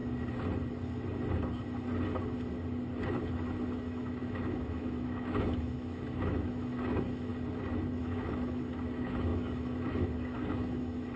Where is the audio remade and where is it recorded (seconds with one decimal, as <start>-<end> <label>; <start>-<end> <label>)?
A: 0.0-3.8 recorded; 3.8-7.3 remade; 7.3-8.0 recorded; 8.0-11.2 remade